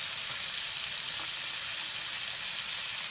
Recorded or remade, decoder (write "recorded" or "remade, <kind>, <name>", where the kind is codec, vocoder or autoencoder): recorded